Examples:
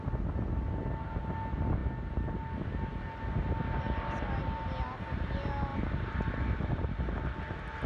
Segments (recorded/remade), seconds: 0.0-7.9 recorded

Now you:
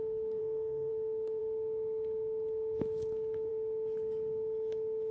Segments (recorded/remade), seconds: 0.0-0.4 recorded; 0.4-0.9 remade; 0.9-5.1 recorded

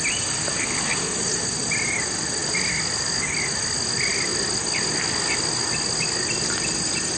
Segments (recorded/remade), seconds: 0.0-7.2 recorded